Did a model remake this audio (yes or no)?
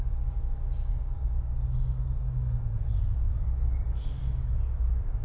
yes